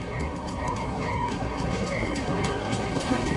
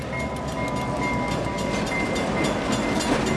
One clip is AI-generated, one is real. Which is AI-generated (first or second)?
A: first